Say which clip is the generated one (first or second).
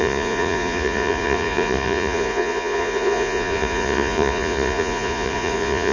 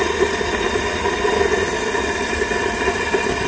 first